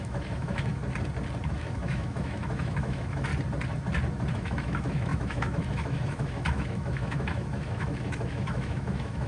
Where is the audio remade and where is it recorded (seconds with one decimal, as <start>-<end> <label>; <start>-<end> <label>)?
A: 0.0-0.8 remade; 0.8-1.5 recorded; 1.5-3.3 remade; 3.3-4.3 recorded; 4.3-9.3 remade